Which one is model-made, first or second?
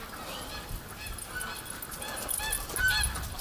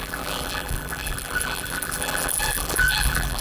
second